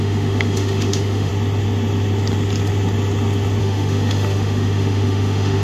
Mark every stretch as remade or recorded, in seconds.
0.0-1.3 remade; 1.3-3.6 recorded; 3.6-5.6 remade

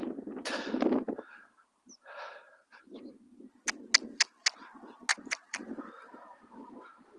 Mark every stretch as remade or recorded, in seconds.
0.0-1.3 recorded; 1.3-3.0 remade; 3.0-4.0 recorded; 4.0-4.6 remade; 4.6-5.1 recorded; 5.1-5.8 remade; 5.8-7.2 recorded

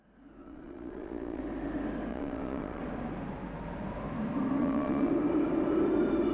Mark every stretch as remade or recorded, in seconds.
0.0-0.4 recorded; 0.4-1.4 remade; 1.4-2.1 recorded; 2.1-2.8 remade; 2.8-4.6 recorded; 4.6-5.1 remade; 5.1-6.3 recorded

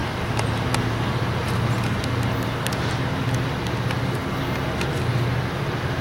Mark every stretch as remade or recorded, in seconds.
0.0-6.0 recorded

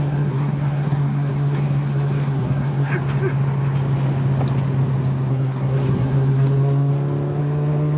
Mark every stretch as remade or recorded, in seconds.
0.0-2.9 remade; 2.9-5.3 recorded; 5.3-6.9 remade; 6.9-7.4 recorded; 7.4-8.0 remade